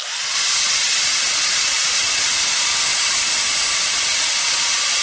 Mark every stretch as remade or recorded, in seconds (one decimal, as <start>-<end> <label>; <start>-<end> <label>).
0.0-0.8 recorded; 0.8-2.2 remade; 2.2-2.9 recorded; 2.9-3.4 remade; 3.4-3.9 recorded; 3.9-5.0 remade